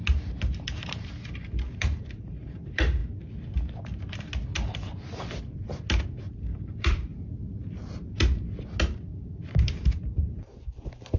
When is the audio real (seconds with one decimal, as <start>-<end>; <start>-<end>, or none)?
0.0-0.7; 3.0-6.2; 7.1-8.8